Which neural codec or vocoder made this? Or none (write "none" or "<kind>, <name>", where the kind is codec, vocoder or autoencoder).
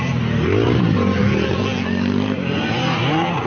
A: none